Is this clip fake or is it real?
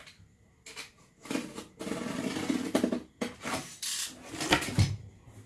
real